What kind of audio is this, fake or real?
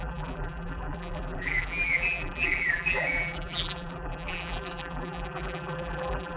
fake